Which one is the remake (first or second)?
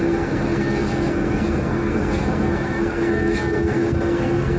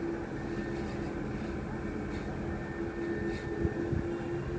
first